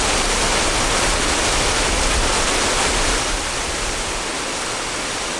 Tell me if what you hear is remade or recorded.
recorded